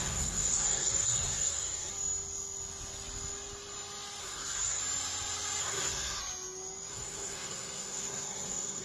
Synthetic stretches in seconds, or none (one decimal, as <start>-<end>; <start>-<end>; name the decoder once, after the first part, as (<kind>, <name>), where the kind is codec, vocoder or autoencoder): 0.0-1.9 (codec, SNAC); 4.2-4.8; 5.6-6.2; 6.9-8.8